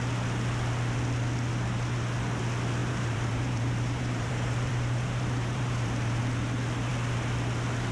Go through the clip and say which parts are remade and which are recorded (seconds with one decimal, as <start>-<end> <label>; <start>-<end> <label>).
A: 0.0-2.8 recorded; 2.8-6.2 remade; 6.2-7.9 recorded